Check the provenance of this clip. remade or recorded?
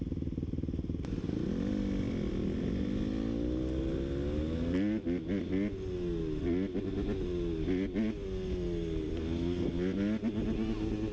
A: recorded